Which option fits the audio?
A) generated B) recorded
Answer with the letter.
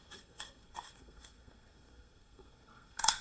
A